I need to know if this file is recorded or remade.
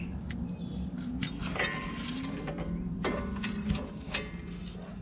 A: recorded